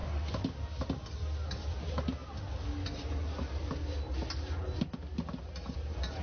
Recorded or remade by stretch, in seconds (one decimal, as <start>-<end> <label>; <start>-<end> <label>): 0.0-6.2 recorded